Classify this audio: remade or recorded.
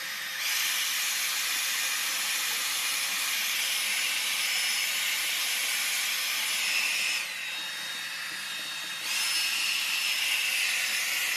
recorded